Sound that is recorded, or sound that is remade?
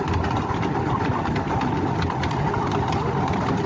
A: recorded